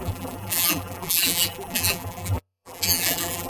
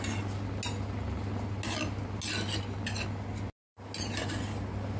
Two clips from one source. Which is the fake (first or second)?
first